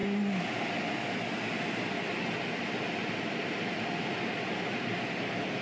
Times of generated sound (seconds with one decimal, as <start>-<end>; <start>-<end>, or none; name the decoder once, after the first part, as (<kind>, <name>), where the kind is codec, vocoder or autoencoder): none